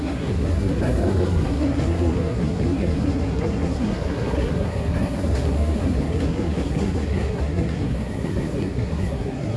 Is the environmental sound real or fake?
fake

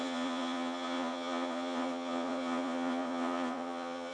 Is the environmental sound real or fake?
fake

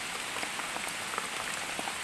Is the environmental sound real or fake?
real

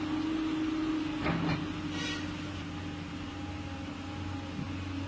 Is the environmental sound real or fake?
real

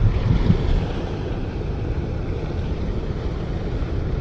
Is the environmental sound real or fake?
fake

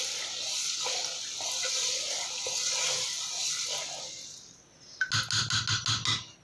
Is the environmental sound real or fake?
real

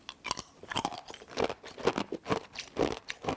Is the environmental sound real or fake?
real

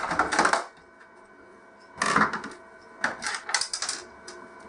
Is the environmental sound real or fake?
real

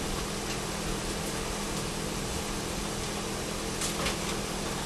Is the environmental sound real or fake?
real